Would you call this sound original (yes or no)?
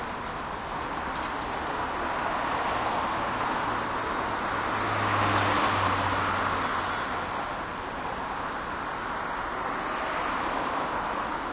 yes